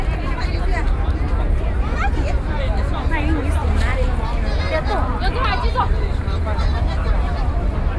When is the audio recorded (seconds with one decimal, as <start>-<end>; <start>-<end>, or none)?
3.9-4.6

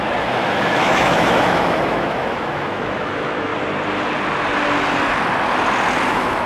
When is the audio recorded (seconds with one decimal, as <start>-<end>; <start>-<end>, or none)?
3.5-6.1